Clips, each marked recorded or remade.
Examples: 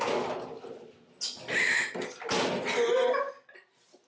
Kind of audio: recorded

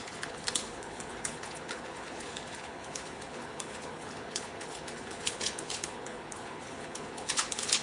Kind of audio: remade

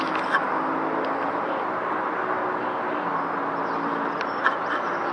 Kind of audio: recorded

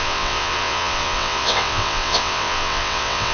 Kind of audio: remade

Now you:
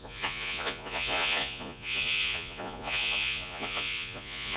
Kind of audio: remade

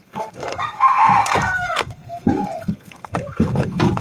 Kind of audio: remade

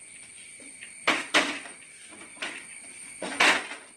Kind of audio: remade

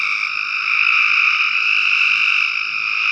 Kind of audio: recorded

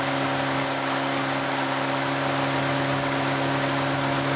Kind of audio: recorded